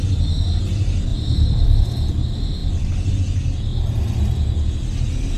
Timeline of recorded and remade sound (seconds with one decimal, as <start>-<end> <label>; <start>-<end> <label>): 0.0-1.1 recorded; 1.1-2.1 remade; 2.1-2.6 recorded; 2.6-3.1 remade; 3.1-5.4 recorded

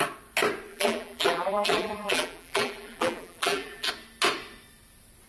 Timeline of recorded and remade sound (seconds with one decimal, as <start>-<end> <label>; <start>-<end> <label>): 0.0-0.7 recorded; 0.7-3.9 remade; 3.9-5.3 recorded

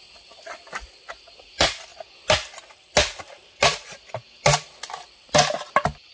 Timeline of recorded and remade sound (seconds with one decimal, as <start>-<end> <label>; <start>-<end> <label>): 0.0-6.1 recorded

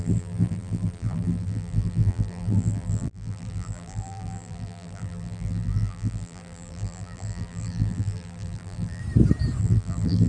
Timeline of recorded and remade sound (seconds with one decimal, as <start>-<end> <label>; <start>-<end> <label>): 0.0-9.0 remade; 9.0-9.6 recorded; 9.6-10.3 remade

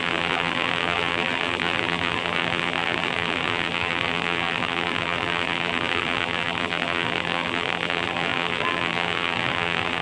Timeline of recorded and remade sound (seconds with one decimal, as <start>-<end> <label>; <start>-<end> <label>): 0.0-10.0 remade

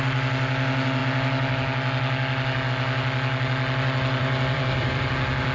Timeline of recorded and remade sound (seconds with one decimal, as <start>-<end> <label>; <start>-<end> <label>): 0.0-4.2 recorded; 4.2-5.1 remade; 5.1-5.5 recorded

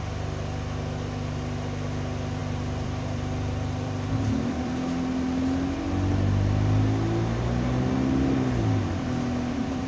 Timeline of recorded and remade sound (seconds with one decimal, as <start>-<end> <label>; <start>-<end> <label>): 0.0-2.4 recorded; 2.4-4.7 remade; 4.7-9.9 recorded

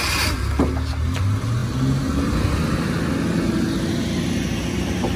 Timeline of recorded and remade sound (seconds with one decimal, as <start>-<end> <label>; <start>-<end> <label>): 0.0-5.2 recorded